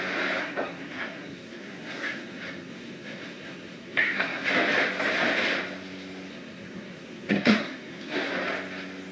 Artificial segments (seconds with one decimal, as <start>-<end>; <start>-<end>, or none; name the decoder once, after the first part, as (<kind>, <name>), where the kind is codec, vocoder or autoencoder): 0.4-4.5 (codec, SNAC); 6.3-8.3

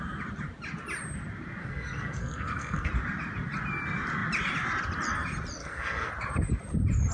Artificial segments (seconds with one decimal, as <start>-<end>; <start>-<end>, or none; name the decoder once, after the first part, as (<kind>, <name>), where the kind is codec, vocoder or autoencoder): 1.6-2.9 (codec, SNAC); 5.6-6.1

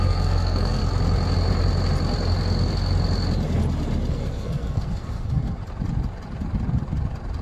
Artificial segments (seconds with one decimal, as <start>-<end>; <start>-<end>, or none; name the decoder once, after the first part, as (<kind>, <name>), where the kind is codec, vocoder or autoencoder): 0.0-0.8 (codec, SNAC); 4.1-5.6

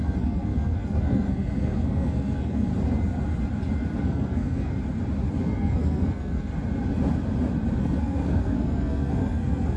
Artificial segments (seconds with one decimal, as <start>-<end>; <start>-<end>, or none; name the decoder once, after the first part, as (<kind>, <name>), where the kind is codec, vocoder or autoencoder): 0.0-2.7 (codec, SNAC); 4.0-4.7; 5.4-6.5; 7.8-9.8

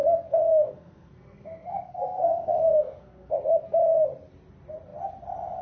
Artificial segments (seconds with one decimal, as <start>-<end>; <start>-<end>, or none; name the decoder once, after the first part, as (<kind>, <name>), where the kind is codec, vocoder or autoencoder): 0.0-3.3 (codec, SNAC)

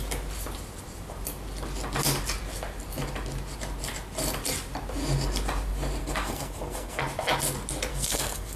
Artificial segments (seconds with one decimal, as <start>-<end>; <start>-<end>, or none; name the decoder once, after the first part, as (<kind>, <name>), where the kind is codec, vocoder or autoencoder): 6.0-7.0 (codec, SNAC); 7.9-8.6

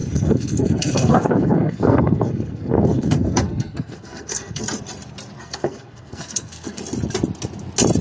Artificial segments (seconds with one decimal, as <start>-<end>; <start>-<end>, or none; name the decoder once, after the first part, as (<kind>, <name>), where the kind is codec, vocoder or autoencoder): 0.0-4.6 (codec, SNAC); 5.4-6.8

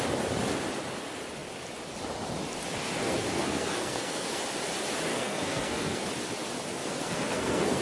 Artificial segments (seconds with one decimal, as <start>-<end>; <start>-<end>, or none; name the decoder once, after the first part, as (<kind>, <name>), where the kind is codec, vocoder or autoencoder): 3.0-4.4 (codec, SNAC); 5.1-6.1; 6.8-7.8